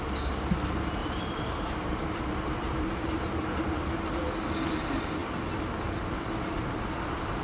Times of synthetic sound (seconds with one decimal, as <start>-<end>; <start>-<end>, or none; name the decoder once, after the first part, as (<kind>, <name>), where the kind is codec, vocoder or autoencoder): 1.0-4.5 (vocoder, BigVGAN v2)